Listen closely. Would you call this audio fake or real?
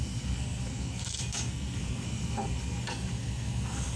fake